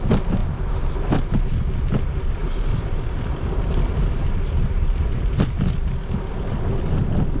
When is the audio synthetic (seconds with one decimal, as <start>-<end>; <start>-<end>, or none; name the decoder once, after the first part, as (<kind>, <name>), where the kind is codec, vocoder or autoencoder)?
2.4-5.5 (vocoder, BigVGAN v2)